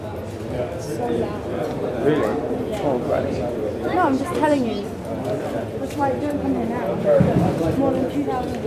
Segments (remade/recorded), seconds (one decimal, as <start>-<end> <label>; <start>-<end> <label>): 0.0-2.3 recorded; 2.3-6.0 remade; 6.0-8.7 recorded